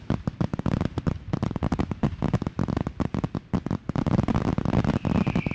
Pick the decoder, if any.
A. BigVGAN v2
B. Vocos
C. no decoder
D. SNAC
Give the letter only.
C